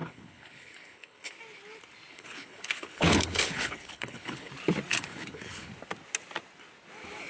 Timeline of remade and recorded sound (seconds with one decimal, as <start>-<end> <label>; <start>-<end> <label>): 0.0-1.3 remade; 1.3-2.1 recorded; 2.1-4.5 remade; 4.5-4.9 recorded; 4.9-5.7 remade; 5.7-7.3 recorded